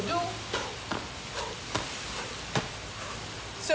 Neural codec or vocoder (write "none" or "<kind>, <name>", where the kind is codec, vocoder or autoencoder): none